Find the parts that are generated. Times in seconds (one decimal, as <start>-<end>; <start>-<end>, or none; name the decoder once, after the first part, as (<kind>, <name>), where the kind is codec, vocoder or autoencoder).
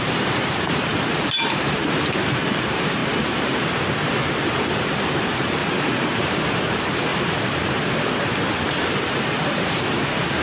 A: 0.0-3.0 (vocoder, BigVGAN v2); 4.9-5.6; 6.2-7.1; 8.7-10.4